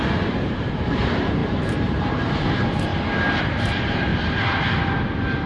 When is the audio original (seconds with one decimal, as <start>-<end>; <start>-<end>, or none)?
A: 2.9-3.4; 4.1-5.5